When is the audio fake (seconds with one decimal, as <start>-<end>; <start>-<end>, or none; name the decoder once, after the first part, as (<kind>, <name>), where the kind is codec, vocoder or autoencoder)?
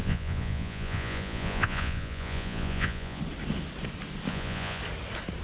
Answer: 0.0-3.2 (vocoder, Vocos); 4.3-4.8